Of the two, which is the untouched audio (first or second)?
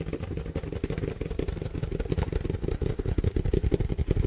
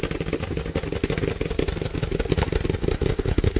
second